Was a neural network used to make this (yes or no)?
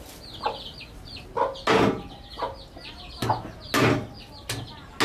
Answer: no